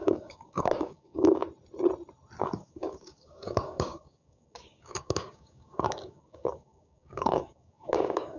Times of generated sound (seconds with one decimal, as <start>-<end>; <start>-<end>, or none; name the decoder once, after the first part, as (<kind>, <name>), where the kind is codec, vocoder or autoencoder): 0.0-1.4 (codec, DAC); 2.4-8.4